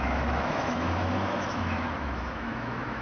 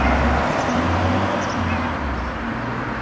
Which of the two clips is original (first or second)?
second